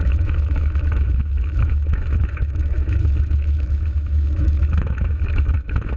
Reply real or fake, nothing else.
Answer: fake